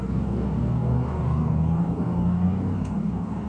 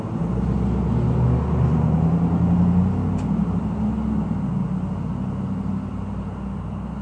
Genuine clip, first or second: second